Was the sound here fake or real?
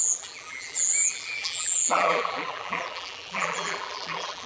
fake